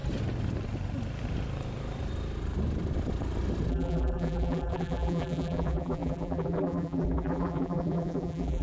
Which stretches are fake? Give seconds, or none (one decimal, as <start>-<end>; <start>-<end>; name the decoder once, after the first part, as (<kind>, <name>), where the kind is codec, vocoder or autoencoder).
3.7-8.6 (vocoder, BigVGAN v2)